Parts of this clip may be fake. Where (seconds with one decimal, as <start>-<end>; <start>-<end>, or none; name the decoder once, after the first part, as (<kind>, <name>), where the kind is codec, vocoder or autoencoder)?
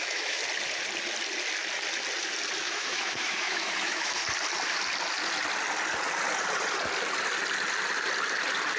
0.0-0.4 (autoencoder, DAC-VAE); 2.6-4.2